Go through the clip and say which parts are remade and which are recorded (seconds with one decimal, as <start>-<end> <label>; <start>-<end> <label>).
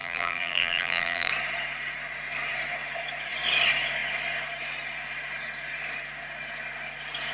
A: 0.0-1.3 remade; 1.3-7.3 recorded